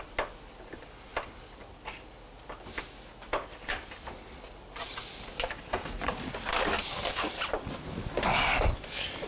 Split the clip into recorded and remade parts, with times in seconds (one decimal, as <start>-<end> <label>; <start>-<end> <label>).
0.0-9.3 recorded